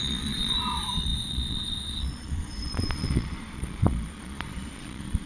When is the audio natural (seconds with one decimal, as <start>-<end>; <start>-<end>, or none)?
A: none